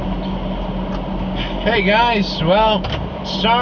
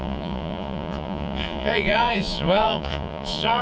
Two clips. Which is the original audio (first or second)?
first